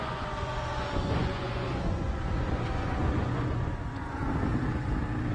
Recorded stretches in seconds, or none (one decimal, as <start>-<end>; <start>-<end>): 4.2-5.3